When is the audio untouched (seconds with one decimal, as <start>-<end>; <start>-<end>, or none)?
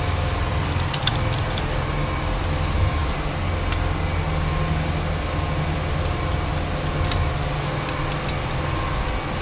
0.0-0.5; 1.1-9.4